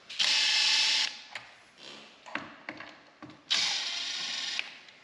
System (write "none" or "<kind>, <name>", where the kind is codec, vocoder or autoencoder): none